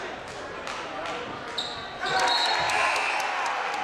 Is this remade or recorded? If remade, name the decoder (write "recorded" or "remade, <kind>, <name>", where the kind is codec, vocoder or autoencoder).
recorded